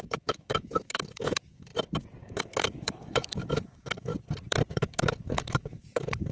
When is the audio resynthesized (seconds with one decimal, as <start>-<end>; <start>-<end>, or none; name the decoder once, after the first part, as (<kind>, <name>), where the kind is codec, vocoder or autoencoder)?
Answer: 0.0-1.7 (autoencoder, DAC-VAE); 2.2-4.1; 4.7-6.3